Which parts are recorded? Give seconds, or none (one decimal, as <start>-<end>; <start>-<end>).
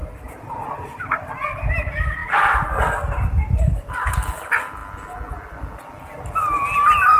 1.0-7.2